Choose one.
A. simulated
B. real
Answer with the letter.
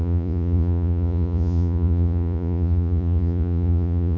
A